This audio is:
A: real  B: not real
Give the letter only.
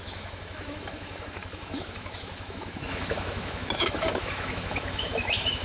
B